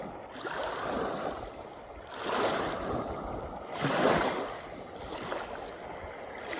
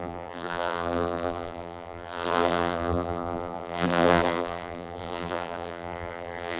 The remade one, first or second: second